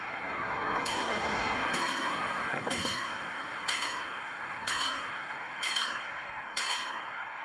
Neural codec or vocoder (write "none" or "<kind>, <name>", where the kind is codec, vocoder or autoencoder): codec, SNAC